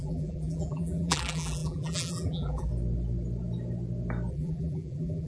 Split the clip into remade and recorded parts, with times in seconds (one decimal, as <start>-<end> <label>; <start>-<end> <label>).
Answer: 0.0-2.7 remade; 2.7-4.3 recorded; 4.3-5.3 remade